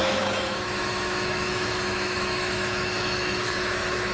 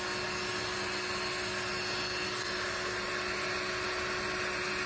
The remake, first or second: first